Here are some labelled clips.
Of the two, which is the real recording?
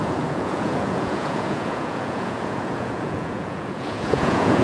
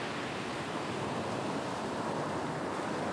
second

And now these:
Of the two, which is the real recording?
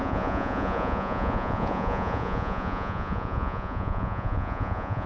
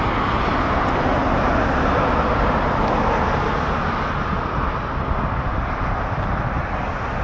second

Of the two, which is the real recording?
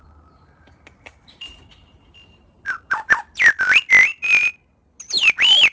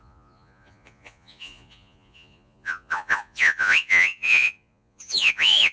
first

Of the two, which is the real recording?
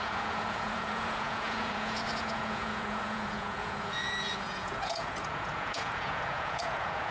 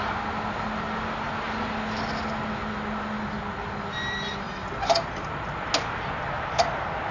second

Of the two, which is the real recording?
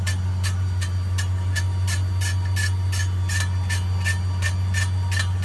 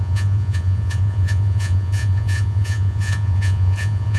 first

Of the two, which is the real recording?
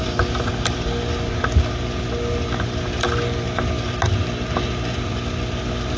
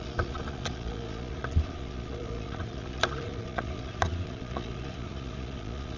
first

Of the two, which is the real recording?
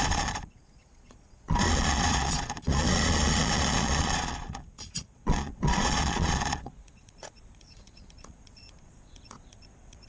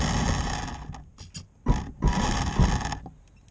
second